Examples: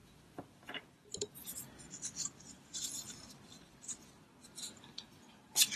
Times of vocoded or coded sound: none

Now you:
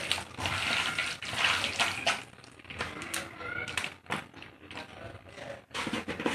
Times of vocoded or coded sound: 0.0-6.3 (vocoder, BigVGAN v2)

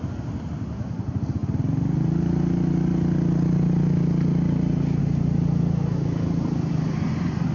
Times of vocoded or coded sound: none

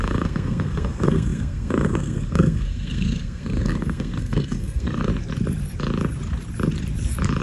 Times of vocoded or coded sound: 0.0-5.1 (codec, SNAC)

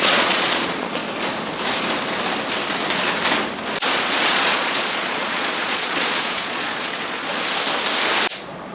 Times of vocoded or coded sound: 0.0-1.0 (vocoder, Vocos); 4.3-7.3

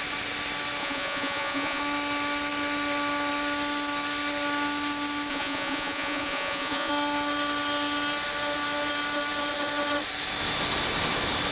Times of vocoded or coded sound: 0.8-1.8 (vocoder, Vocos); 5.3-6.9

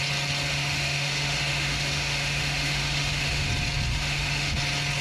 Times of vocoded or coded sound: 0.5-3.5 (autoencoder, DAC-VAE); 3.9-4.6

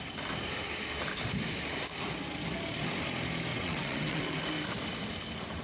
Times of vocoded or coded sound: 3.5-4.4 (vocoder, WaveNeXt)